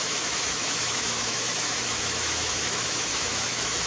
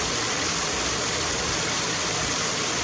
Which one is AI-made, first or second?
first